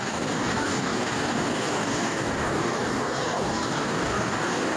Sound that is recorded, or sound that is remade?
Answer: remade